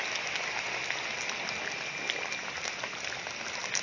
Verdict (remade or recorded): recorded